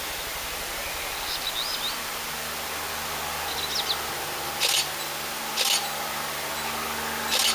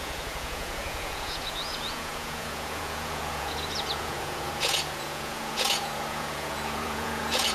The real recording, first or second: first